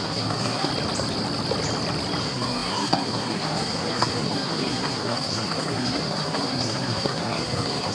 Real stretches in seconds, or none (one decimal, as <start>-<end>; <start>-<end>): 0.7-2.2